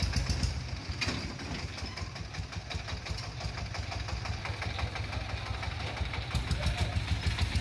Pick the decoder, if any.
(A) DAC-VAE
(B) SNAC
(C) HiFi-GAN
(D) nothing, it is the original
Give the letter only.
D